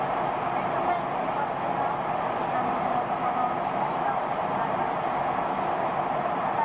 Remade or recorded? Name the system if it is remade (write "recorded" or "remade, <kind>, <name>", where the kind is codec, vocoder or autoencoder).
recorded